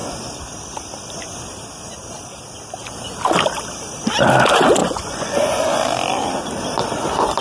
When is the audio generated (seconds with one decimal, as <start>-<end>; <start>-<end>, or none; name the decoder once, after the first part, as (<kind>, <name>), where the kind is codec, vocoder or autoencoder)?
4.8-5.8 (vocoder, Vocos)